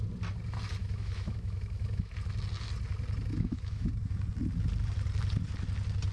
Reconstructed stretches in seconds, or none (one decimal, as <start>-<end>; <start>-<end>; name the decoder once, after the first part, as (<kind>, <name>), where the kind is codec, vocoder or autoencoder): 0.8-2.1 (autoencoder, DAC-VAE); 3.3-3.9